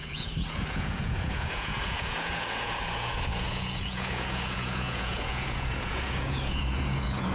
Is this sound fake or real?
fake